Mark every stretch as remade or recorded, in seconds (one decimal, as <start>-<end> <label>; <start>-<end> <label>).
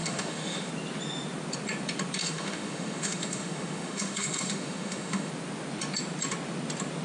0.0-0.7 remade; 0.7-2.2 recorded; 2.2-5.3 remade; 5.3-7.0 recorded